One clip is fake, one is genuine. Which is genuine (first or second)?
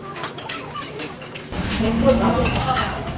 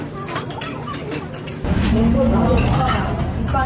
second